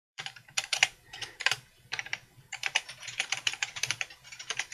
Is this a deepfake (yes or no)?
yes